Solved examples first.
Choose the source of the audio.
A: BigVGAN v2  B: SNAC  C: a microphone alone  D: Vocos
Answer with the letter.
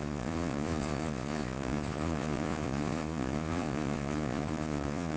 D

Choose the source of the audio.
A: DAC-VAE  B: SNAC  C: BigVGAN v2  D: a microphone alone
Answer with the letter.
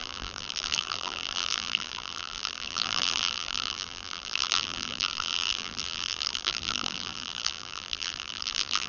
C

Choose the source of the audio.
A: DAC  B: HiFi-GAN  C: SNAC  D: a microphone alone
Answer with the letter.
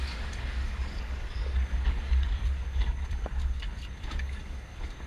A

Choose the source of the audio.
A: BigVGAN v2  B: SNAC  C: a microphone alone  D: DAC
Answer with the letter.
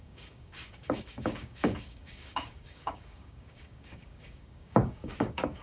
D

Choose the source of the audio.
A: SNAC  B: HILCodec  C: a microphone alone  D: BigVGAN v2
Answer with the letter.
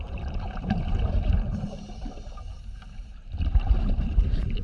D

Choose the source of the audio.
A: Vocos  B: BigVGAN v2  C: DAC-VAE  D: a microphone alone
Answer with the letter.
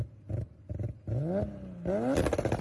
D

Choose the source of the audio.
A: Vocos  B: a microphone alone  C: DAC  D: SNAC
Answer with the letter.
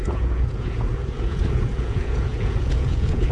A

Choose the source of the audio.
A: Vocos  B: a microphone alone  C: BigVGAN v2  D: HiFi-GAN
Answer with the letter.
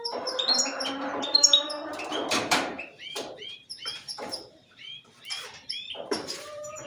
C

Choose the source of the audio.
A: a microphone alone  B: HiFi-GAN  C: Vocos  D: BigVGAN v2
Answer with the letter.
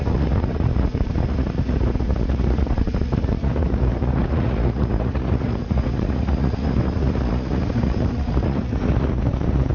C